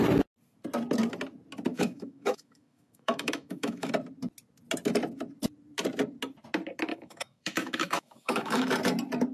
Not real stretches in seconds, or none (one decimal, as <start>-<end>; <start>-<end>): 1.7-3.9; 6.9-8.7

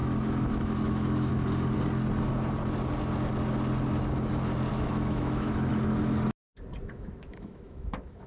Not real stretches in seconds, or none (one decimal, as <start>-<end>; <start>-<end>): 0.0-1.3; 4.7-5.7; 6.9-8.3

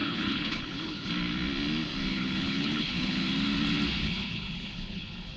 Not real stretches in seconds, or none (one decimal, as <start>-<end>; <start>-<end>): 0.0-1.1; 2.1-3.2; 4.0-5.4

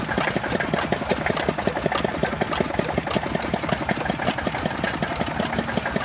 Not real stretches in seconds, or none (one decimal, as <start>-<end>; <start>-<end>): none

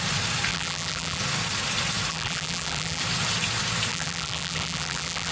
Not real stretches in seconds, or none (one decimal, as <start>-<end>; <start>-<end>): 0.5-1.2; 2.1-3.0; 3.9-5.3

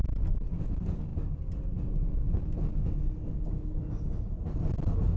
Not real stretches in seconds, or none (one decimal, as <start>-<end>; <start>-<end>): none

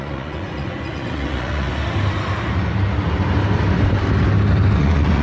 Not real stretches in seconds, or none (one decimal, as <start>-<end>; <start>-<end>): 0.0-1.7; 4.8-5.2

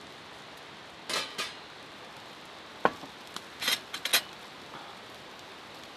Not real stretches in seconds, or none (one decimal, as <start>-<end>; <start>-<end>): none